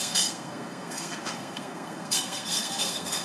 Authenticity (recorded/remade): remade